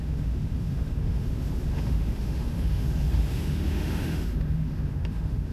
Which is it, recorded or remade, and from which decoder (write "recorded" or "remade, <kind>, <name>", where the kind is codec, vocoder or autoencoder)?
remade, autoencoder, DAC-VAE